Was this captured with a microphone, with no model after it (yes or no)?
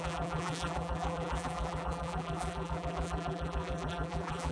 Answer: no